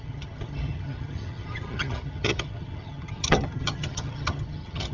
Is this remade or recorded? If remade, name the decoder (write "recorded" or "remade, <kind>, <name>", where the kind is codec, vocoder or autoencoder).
remade, vocoder, HiFi-GAN